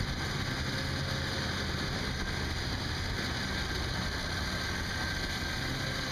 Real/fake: real